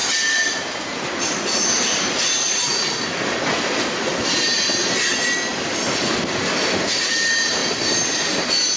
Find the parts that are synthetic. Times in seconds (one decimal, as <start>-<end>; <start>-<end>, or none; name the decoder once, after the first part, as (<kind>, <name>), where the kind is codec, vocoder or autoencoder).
none